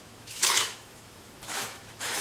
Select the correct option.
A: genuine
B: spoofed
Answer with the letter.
B